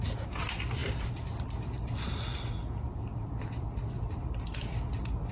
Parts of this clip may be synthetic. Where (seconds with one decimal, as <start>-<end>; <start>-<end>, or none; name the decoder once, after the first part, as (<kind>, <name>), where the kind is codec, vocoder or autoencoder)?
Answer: none